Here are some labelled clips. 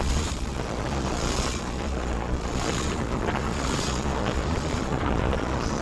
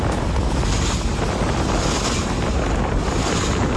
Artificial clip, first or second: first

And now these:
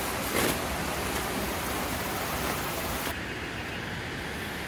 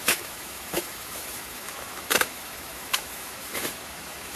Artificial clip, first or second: second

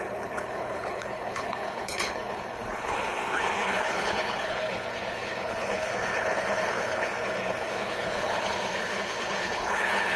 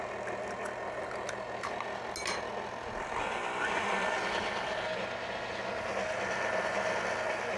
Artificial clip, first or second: first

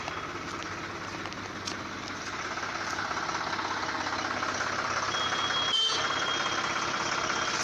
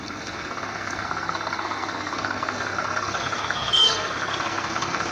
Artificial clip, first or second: second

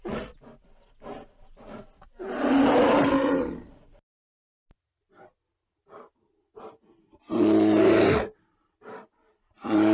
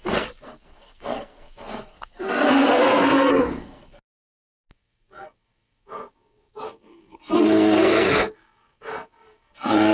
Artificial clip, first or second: second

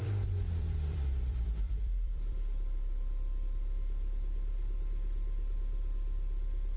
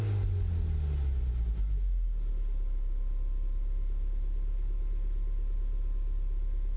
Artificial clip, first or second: first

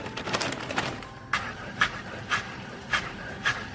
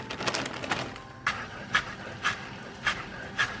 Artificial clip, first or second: first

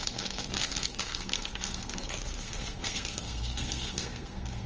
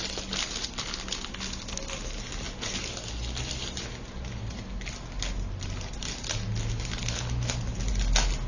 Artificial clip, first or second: first